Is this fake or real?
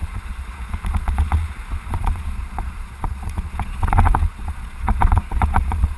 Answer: fake